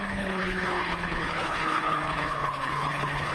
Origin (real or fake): fake